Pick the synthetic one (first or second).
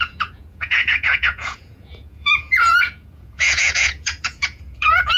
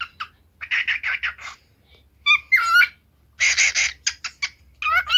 first